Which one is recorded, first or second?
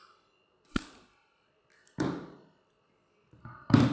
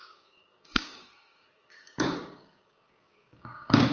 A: first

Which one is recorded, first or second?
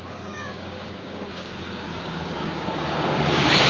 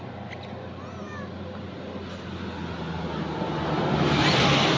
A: second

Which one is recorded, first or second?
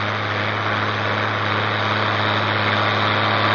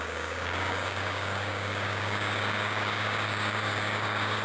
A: first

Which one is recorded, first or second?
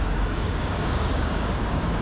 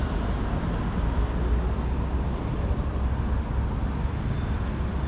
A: second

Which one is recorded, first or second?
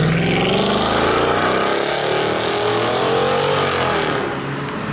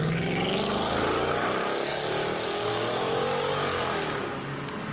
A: first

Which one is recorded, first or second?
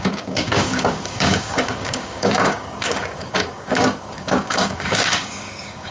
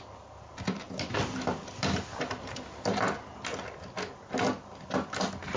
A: second